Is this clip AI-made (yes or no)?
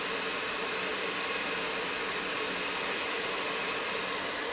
no